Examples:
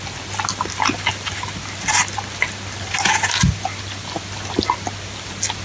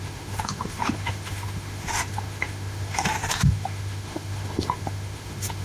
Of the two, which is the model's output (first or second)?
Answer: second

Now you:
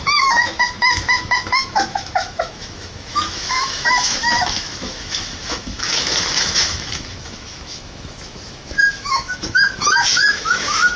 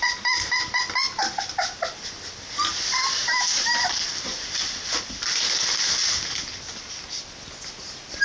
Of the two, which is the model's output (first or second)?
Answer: first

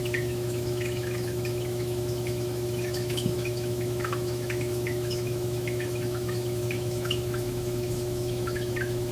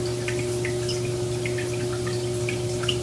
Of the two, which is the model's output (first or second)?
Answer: first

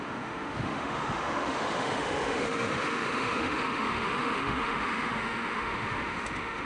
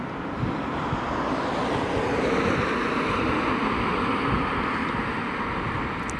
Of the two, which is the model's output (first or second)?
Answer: first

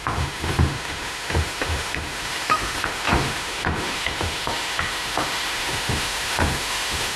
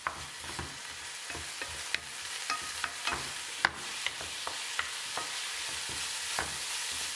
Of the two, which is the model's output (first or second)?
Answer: first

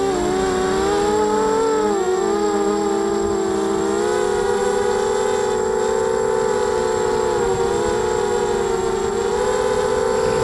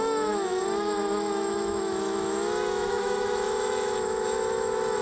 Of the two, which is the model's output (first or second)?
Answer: second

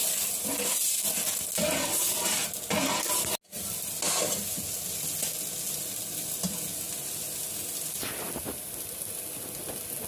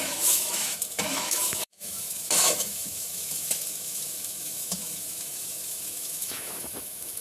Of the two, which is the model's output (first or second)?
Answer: second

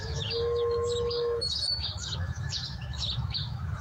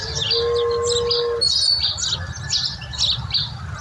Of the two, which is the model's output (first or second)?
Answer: first